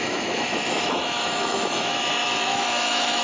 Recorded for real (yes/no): no